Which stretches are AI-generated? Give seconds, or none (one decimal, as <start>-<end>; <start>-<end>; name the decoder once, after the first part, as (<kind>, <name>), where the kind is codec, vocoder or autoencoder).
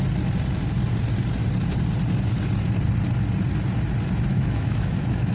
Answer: 4.3-5.3 (autoencoder, DAC-VAE)